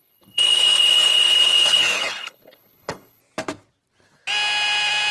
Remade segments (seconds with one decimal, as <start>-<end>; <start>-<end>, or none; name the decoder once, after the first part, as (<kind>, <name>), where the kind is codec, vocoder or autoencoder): 0.0-3.2 (codec, HILCodec)